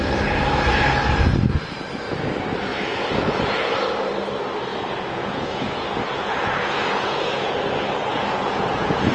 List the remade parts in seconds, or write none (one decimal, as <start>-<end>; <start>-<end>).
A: 2.7-3.4; 4.7-7.6; 8.1-9.1